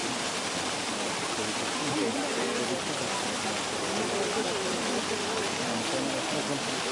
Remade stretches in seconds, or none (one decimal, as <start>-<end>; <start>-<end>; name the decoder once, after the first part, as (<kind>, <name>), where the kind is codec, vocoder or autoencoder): none